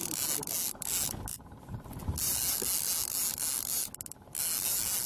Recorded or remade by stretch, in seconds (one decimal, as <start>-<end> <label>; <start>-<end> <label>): 0.0-5.1 recorded